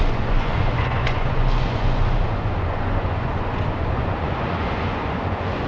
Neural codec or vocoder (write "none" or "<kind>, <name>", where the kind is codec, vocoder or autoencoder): vocoder, Vocos